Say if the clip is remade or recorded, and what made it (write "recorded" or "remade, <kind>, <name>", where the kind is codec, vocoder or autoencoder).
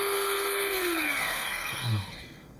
remade, codec, SNAC